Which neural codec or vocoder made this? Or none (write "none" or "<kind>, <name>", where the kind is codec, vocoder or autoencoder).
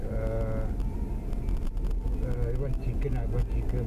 none